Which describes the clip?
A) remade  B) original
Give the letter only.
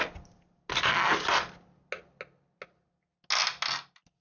B